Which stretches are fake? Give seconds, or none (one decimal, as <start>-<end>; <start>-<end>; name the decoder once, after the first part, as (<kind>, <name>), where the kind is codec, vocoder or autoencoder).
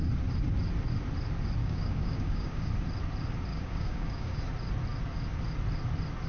1.6-2.7 (codec, DAC); 3.5-4.4